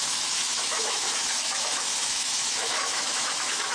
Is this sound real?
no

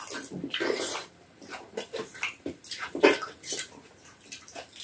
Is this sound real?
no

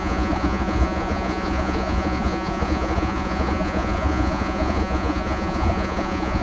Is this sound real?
no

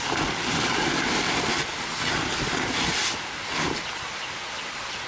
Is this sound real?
yes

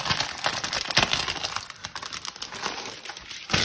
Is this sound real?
yes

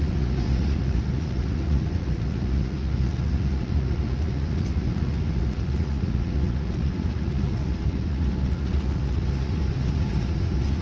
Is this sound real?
no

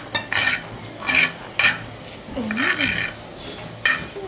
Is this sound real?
yes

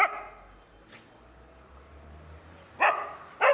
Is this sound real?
yes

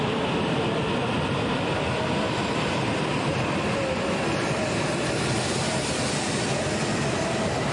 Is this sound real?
no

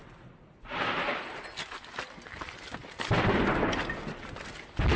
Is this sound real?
yes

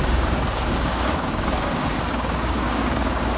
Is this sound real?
no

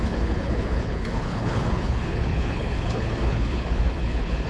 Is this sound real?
no